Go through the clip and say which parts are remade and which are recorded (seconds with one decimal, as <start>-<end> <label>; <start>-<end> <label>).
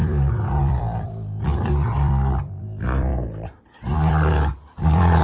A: 0.0-5.2 remade